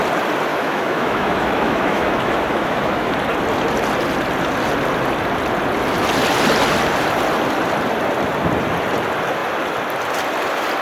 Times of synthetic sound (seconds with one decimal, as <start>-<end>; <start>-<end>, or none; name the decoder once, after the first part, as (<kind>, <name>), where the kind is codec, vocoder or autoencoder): 0.5-3.1 (autoencoder, DAC-VAE)